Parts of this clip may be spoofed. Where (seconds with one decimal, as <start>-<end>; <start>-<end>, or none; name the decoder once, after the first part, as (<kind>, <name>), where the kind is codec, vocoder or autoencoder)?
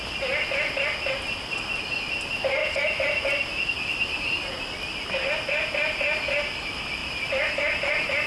2.6-3.3 (vocoder, BigVGAN v2); 7.0-8.3